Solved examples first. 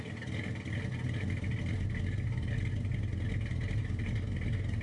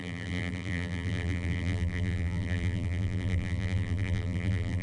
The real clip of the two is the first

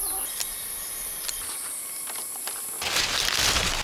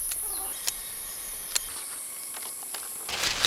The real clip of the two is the first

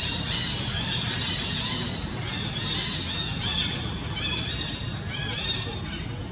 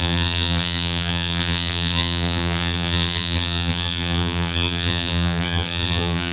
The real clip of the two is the first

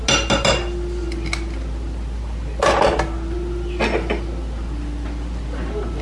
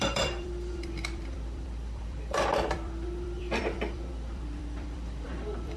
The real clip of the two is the first